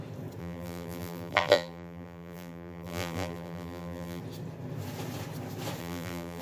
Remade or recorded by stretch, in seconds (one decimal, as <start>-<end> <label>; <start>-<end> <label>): 0.0-0.4 recorded; 0.4-4.2 remade; 4.2-5.8 recorded; 5.8-6.4 remade